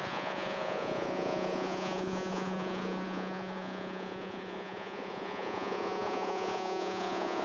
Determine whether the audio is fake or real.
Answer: fake